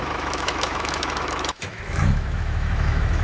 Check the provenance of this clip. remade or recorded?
remade